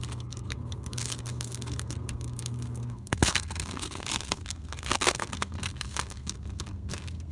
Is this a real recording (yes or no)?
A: no